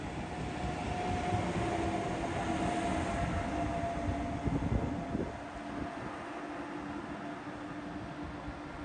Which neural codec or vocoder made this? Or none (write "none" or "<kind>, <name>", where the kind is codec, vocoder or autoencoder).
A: none